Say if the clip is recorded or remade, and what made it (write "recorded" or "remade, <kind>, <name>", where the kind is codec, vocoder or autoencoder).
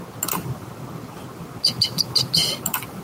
recorded